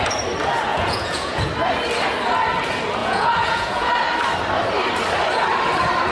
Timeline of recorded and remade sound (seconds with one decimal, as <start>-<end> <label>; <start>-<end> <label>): 0.0-0.7 recorded; 0.7-1.5 remade; 1.5-3.0 recorded; 3.0-3.9 remade; 3.9-6.1 recorded